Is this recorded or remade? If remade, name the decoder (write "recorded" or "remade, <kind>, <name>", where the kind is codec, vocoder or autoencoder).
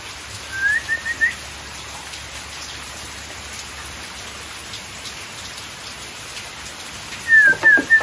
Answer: recorded